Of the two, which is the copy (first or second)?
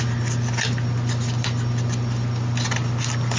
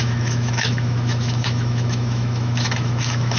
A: second